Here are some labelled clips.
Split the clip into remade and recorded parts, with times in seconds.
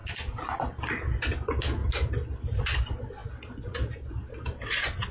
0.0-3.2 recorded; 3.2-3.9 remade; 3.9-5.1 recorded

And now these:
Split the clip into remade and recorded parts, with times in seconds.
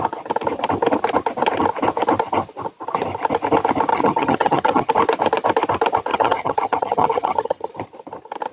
0.0-3.9 recorded; 3.9-4.9 remade; 4.9-6.1 recorded; 6.1-7.7 remade; 7.7-8.5 recorded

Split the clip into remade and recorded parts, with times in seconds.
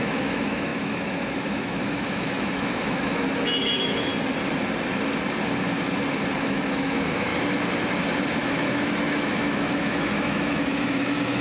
0.0-4.1 remade; 4.1-6.3 recorded; 6.3-7.3 remade; 7.3-8.4 recorded; 8.4-11.4 remade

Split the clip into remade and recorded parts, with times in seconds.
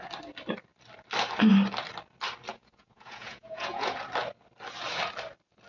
0.0-2.5 recorded; 2.5-4.0 remade; 4.0-5.7 recorded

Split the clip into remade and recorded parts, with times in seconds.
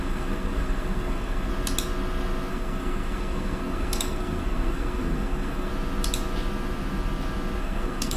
0.0-1.5 remade; 1.5-2.5 recorded; 2.5-5.7 remade; 5.7-7.6 recorded; 7.6-8.2 remade